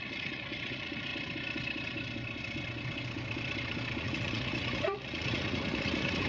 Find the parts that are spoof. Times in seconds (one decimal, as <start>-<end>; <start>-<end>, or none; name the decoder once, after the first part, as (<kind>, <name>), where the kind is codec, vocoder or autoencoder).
0.0-1.1 (vocoder, Vocos); 4.0-6.3